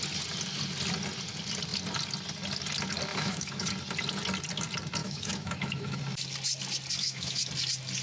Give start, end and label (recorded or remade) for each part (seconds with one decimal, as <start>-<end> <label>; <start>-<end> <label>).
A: 0.0-3.1 recorded; 3.1-3.7 remade; 3.7-5.0 recorded; 5.0-6.0 remade; 6.0-7.0 recorded; 7.0-7.5 remade; 7.5-8.0 recorded